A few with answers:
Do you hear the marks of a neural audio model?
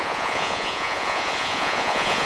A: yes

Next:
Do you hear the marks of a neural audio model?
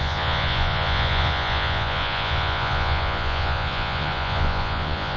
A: yes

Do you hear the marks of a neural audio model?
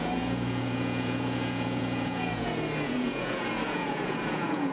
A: yes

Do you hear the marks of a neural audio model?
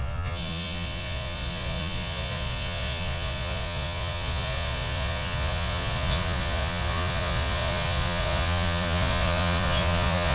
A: yes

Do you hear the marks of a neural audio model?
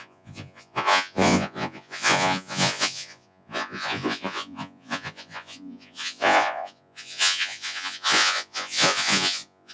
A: yes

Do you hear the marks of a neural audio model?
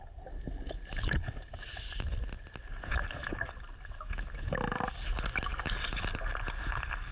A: no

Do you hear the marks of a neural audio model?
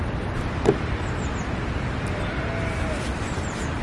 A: no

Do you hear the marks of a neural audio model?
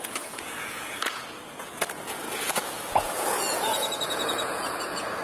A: yes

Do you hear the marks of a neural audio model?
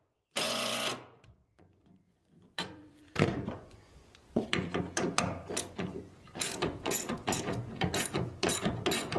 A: yes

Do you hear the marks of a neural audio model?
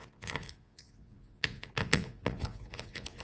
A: yes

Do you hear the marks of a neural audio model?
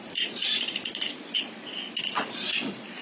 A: yes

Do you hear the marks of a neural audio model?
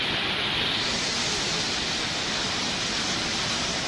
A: no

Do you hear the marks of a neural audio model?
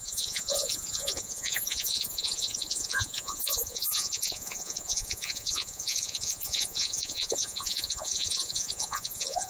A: yes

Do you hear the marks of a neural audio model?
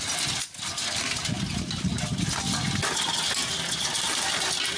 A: no